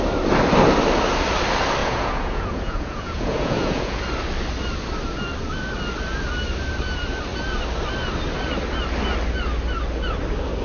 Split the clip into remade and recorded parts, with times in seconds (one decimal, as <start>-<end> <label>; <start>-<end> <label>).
0.0-1.8 recorded; 1.8-4.0 remade; 4.0-10.6 recorded